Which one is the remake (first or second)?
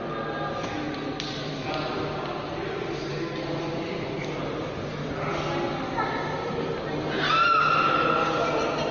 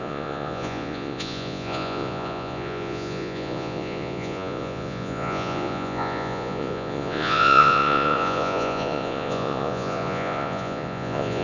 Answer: second